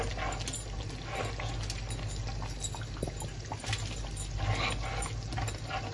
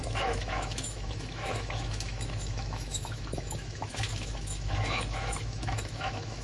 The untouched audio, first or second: first